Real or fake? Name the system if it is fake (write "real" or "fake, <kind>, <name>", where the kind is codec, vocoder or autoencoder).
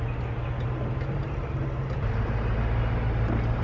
real